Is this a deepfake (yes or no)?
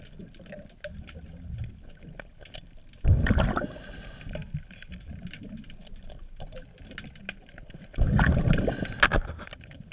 no